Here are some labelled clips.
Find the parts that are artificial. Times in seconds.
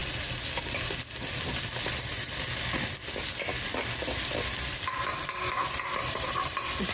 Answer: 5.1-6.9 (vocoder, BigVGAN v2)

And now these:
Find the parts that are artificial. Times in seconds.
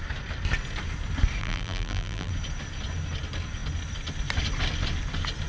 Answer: 1.4-2.3 (vocoder, BigVGAN v2)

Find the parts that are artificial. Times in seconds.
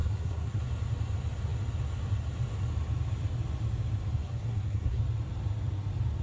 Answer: 0.0-0.6 (codec, SNAC); 4.2-5.0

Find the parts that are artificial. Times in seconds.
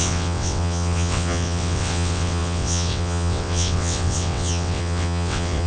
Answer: 0.0-5.7 (vocoder, WaveNeXt)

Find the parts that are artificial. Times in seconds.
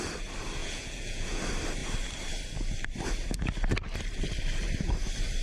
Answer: 0.6-1.4 (vocoder, Vocos)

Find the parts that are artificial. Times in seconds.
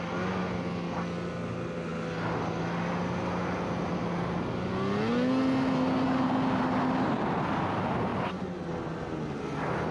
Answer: none